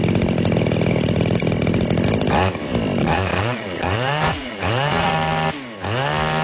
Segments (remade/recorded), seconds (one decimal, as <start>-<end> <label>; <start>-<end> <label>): 0.0-3.0 recorded; 3.0-5.1 remade; 5.1-6.4 recorded